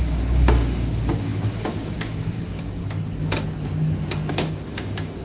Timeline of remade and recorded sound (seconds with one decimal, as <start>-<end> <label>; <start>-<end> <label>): 0.0-2.8 remade; 2.8-4.3 recorded; 4.3-5.2 remade